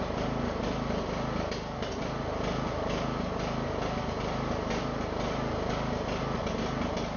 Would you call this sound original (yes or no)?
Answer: yes